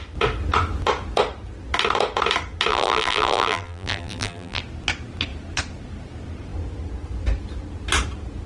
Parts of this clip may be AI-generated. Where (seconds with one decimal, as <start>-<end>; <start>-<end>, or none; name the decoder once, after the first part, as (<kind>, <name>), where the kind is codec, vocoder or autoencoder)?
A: 2.7-4.6 (vocoder, BigVGAN v2)